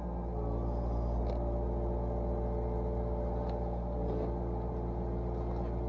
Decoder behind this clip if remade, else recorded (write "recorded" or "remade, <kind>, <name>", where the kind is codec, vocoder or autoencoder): recorded